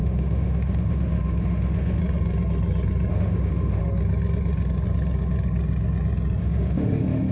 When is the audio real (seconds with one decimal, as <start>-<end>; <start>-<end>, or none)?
2.0-3.1; 3.8-6.4